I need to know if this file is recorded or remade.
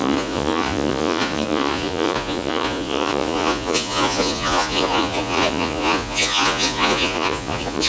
remade